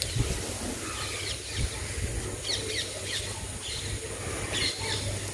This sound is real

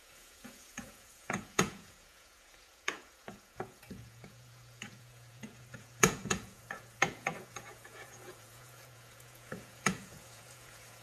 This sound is fake